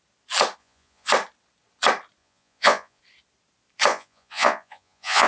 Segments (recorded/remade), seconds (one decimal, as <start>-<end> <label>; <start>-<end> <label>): 0.0-0.6 recorded; 0.6-1.1 remade; 1.1-2.2 recorded; 2.2-3.0 remade; 3.0-3.9 recorded; 3.9-5.3 remade

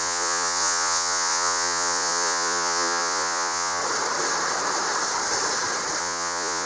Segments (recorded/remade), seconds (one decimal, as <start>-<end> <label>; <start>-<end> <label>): 0.0-3.8 remade; 3.8-6.0 recorded; 6.0-6.7 remade

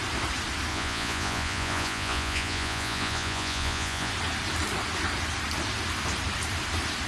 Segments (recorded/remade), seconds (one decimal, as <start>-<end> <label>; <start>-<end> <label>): 0.0-0.7 recorded; 0.7-4.1 remade; 4.1-7.1 recorded

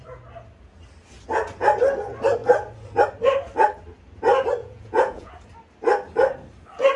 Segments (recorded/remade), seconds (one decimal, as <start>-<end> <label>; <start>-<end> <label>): 0.0-4.6 recorded; 4.6-5.3 remade; 5.3-7.0 recorded

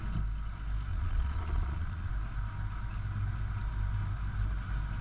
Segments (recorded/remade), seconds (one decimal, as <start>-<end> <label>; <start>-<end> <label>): 0.0-0.9 recorded; 0.9-2.1 remade; 2.1-5.0 recorded

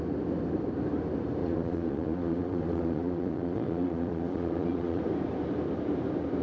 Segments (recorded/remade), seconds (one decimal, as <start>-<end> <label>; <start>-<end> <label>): 0.0-1.4 recorded; 1.4-5.0 remade; 5.0-6.4 recorded

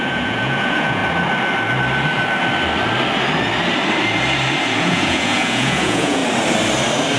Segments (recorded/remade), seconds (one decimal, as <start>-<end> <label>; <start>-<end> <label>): 0.0-1.0 remade; 1.0-4.8 recorded; 4.8-6.2 remade; 6.2-7.2 recorded

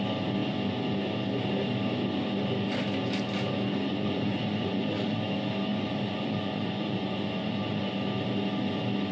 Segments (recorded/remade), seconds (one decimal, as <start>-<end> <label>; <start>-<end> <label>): 0.0-3.9 recorded; 3.9-5.3 remade; 5.3-5.7 recorded; 5.7-7.8 remade; 7.8-9.1 recorded